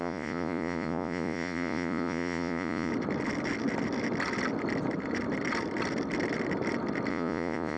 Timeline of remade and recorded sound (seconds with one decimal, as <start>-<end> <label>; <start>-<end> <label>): 0.0-2.9 remade; 2.9-7.1 recorded; 7.1-7.8 remade